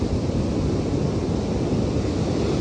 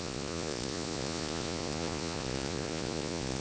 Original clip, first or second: first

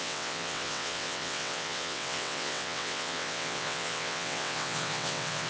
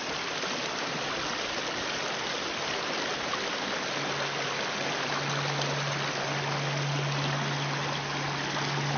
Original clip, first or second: second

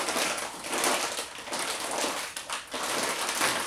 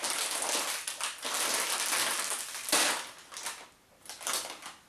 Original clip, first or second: second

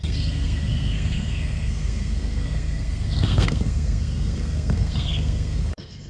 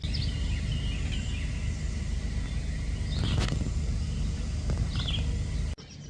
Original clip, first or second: second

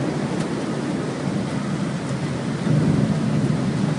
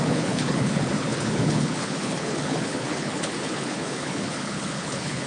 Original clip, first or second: first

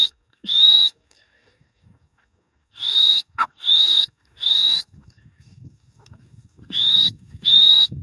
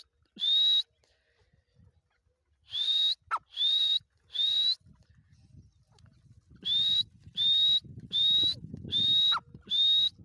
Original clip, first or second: second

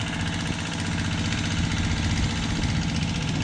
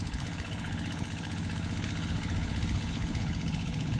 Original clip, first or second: first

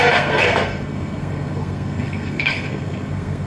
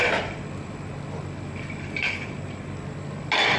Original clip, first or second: second